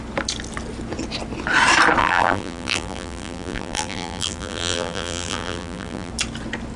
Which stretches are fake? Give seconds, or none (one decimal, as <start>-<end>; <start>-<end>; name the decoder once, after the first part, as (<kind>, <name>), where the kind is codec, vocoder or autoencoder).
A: 2.0-6.1 (vocoder, BigVGAN v2)